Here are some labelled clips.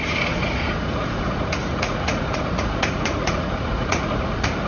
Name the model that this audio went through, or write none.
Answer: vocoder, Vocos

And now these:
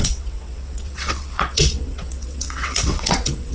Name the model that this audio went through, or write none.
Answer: vocoder, WaveNeXt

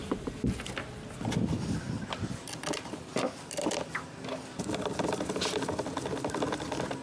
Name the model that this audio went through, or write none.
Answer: none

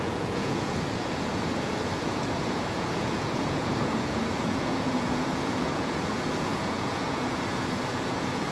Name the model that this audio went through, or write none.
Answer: vocoder, Vocos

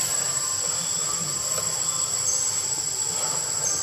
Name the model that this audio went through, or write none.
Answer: none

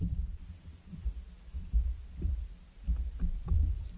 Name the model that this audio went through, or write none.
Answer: vocoder, BigVGAN v2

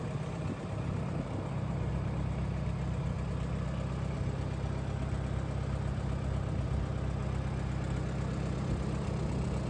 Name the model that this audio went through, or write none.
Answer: none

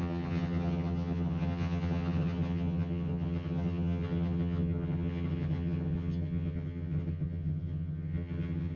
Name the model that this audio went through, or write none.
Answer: vocoder, HiFi-GAN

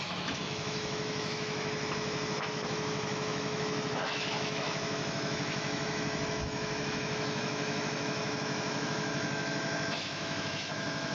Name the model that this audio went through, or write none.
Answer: autoencoder, DAC-VAE